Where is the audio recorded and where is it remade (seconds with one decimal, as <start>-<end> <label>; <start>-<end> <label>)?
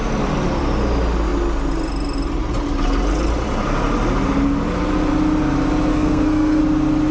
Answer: 0.0-5.9 recorded; 5.9-6.6 remade; 6.6-7.1 recorded